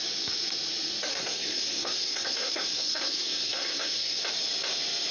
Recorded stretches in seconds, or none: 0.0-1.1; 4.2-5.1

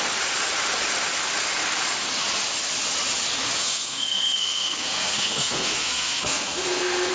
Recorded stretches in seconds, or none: 0.0-3.6

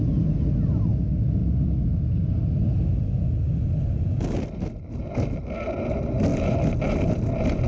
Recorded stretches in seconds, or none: 0.0-6.3; 7.0-7.7

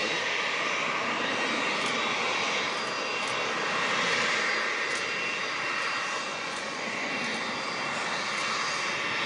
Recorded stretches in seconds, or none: 0.0-6.3; 7.1-9.3

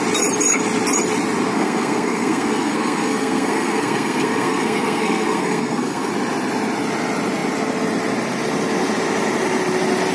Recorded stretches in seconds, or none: 0.0-1.5; 6.1-10.1